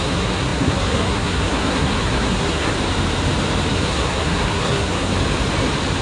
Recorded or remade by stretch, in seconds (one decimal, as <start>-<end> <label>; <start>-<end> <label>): 0.0-2.7 remade; 2.7-3.7 recorded; 3.7-5.1 remade; 5.1-6.0 recorded